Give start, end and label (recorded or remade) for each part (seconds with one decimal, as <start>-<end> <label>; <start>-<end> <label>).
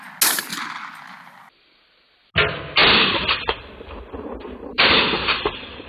0.0-2.8 recorded; 2.8-5.0 remade; 5.0-5.9 recorded